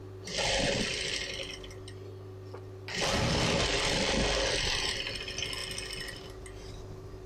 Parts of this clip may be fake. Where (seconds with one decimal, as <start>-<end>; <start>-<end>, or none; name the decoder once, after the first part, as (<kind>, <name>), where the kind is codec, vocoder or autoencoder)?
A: none